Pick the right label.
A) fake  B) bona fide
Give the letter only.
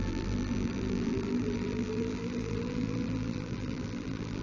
A